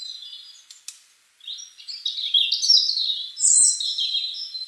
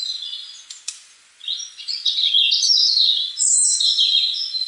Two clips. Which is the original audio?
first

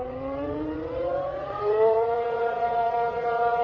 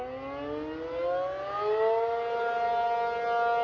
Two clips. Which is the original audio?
second